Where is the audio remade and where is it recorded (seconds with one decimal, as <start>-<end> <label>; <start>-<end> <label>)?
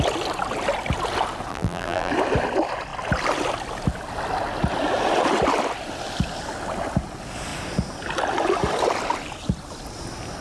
0.0-1.5 recorded; 1.5-2.1 remade; 2.1-10.4 recorded